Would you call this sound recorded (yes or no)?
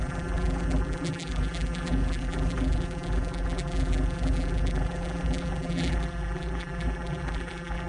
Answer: no